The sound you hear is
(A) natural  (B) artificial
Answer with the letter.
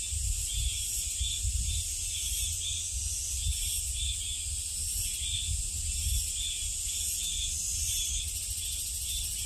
A